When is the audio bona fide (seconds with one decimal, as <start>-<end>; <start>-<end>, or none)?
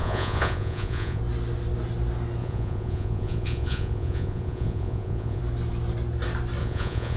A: 1.2-2.4; 5.4-6.6